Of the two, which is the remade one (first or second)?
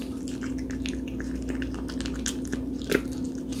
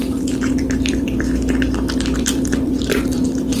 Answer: second